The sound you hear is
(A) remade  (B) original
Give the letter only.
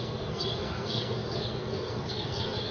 A